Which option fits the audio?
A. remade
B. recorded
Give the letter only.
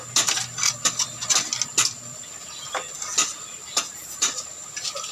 B